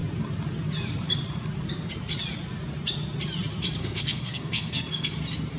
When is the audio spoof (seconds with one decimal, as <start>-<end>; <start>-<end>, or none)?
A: 3.8-5.1